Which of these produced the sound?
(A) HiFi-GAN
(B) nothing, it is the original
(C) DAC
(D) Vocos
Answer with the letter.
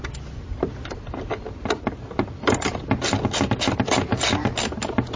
B